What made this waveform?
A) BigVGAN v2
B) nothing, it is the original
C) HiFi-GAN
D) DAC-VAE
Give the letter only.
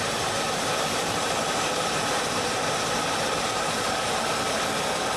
A